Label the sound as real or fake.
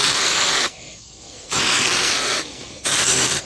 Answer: fake